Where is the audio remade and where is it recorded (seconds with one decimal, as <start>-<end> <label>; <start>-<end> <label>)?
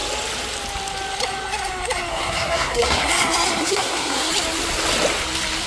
0.0-2.1 recorded; 2.1-3.1 remade; 3.1-3.6 recorded; 3.6-4.3 remade; 4.3-5.7 recorded